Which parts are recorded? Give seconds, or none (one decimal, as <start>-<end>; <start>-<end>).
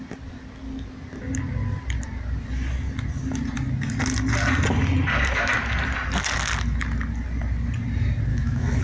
0.0-8.3